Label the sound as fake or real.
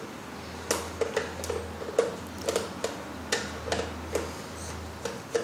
real